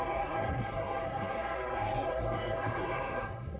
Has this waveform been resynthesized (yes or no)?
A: yes